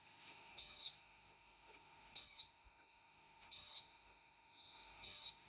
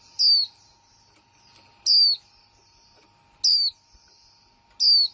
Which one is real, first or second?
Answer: second